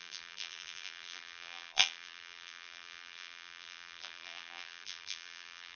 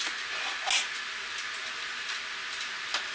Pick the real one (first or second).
second